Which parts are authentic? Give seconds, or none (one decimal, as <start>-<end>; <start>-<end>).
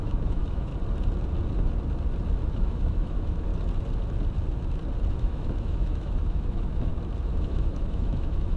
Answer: 0.7-2.5; 3.5-5.1; 6.9-7.4